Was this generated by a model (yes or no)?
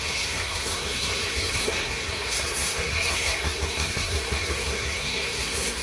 yes